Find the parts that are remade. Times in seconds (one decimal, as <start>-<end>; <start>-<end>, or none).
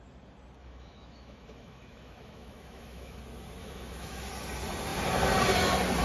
0.6-3.2; 3.6-4.3